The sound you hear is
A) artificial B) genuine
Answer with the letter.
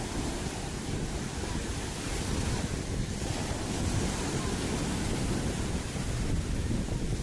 B